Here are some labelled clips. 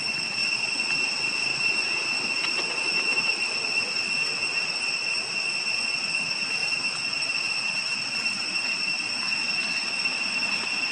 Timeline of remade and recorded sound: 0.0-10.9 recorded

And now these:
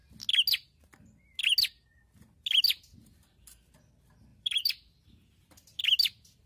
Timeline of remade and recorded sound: 0.0-4.3 recorded; 4.3-5.4 remade; 5.4-6.5 recorded

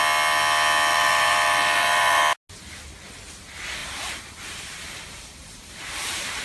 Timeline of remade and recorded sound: 0.0-0.9 recorded; 0.9-2.2 remade; 2.2-3.8 recorded; 3.8-6.4 remade

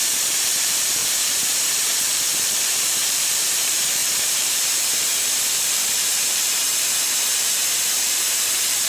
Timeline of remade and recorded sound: 0.0-8.9 remade

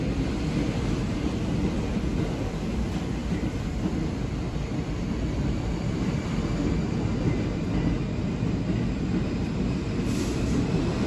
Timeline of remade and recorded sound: 0.0-3.2 recorded; 3.2-5.0 remade; 5.0-11.1 recorded